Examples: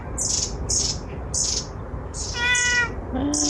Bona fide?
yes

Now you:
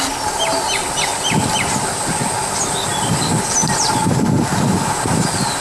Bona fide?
yes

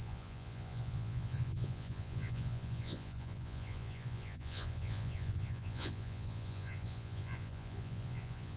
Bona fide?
no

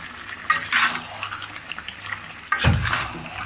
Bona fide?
yes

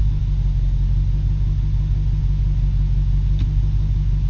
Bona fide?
yes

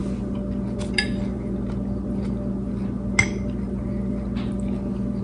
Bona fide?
yes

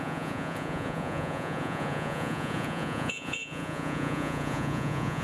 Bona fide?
no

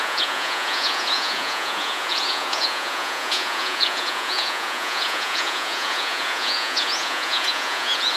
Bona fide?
no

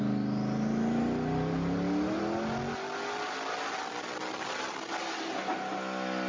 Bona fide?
yes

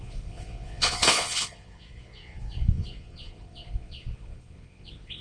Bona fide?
no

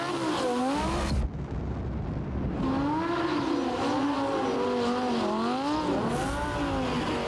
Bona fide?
yes